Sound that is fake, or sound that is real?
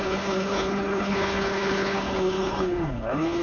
fake